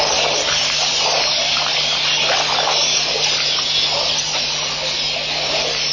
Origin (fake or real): real